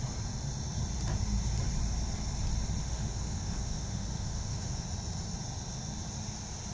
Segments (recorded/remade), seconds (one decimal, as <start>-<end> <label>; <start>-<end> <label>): 0.0-2.8 recorded; 2.8-4.9 remade; 4.9-6.7 recorded